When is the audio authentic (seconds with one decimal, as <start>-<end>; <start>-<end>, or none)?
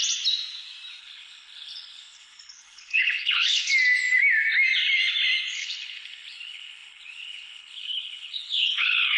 0.0-1.0; 3.7-5.5